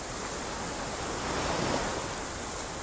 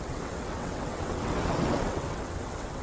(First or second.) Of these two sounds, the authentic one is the first